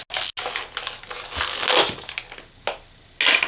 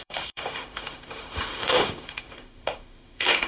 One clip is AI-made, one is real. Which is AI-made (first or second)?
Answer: second